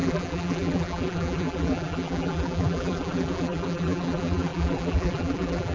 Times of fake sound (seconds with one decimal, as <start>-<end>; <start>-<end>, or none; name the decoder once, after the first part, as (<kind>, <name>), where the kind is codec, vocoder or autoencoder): 0.0-5.7 (vocoder, BigVGAN v2)